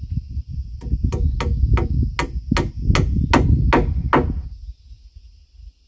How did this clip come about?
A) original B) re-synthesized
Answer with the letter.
A